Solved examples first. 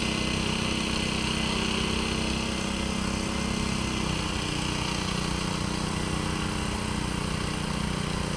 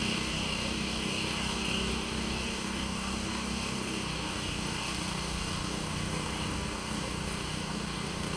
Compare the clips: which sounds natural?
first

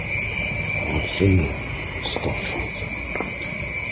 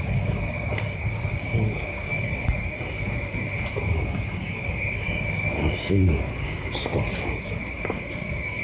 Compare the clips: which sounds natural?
first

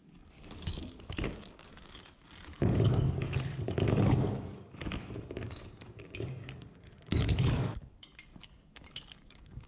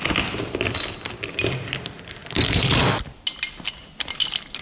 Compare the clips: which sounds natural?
second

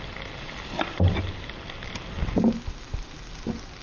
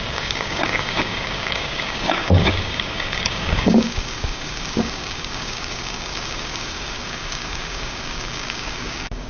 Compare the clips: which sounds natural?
first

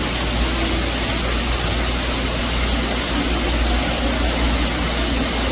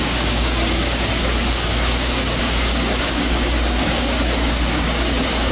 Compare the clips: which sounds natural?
first